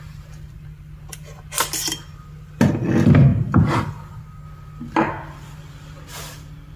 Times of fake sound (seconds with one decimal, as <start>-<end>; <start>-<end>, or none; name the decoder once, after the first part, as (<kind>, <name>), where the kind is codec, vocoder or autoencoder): 3.3-4.2 (vocoder, BigVGAN v2)